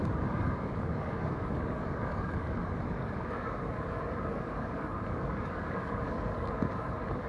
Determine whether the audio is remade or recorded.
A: remade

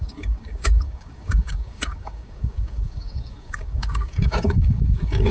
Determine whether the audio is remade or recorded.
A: remade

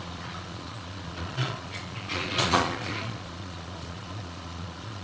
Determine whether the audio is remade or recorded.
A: remade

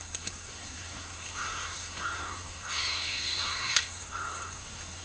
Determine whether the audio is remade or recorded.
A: remade